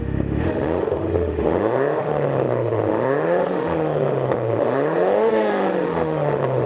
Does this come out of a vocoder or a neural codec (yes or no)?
yes